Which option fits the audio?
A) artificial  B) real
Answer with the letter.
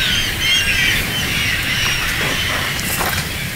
B